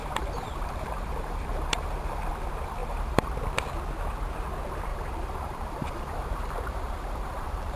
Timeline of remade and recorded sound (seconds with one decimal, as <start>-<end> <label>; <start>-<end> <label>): 0.0-2.3 remade; 2.3-2.8 recorded; 2.8-3.3 remade; 3.3-4.9 recorded; 4.9-7.8 remade